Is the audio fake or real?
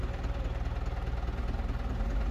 real